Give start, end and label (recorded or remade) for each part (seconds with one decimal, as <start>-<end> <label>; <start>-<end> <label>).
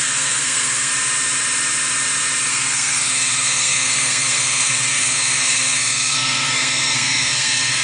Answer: 0.0-0.9 remade; 0.9-2.5 recorded; 2.5-7.8 remade